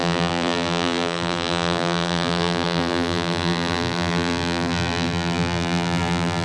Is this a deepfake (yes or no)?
yes